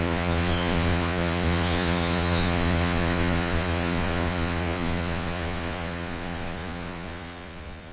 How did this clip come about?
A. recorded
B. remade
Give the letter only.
B